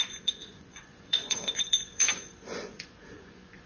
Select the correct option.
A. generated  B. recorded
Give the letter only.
A